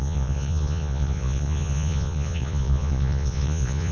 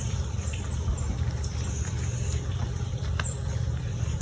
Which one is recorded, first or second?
second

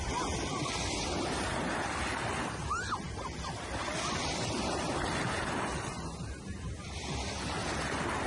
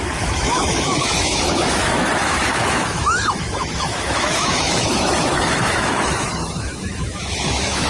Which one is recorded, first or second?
first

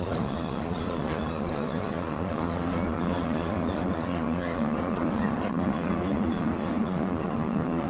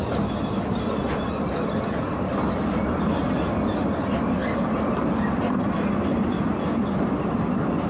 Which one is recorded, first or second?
second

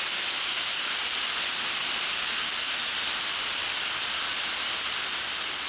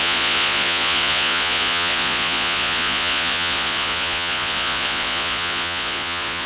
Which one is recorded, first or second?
first